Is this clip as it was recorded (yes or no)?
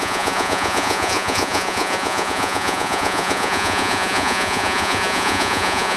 no